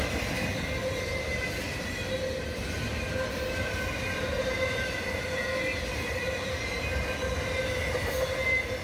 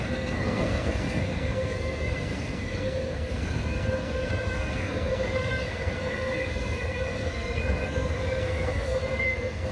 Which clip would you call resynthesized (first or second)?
second